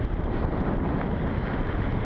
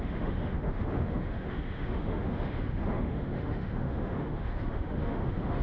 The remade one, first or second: second